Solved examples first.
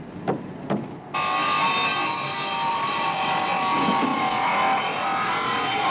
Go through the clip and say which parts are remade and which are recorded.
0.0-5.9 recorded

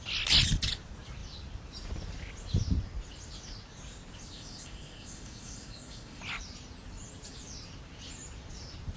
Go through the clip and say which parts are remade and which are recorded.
0.0-4.3 recorded; 4.3-6.2 remade; 6.2-9.0 recorded